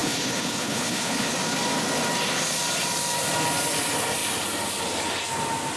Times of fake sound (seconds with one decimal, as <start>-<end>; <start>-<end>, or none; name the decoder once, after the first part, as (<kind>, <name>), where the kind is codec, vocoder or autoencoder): 0.0-1.3 (codec, HILCodec)